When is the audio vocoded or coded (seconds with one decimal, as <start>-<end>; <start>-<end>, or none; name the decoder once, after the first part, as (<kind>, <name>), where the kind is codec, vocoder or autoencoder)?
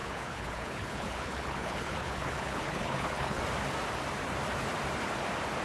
0.0-3.4 (codec, HILCodec)